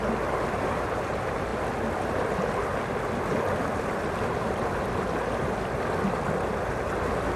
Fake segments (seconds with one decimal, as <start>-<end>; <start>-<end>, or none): none